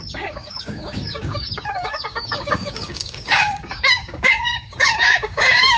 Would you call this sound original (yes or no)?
no